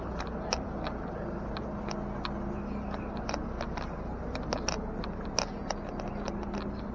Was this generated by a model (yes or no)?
no